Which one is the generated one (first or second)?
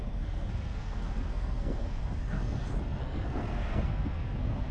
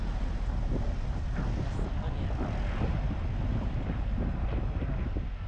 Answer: first